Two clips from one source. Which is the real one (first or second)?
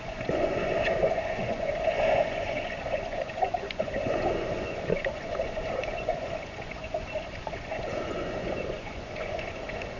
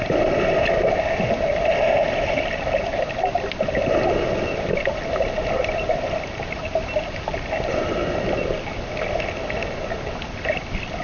second